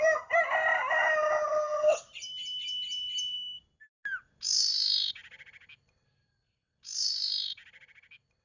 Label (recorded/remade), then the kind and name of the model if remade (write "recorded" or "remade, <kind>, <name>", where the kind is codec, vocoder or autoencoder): recorded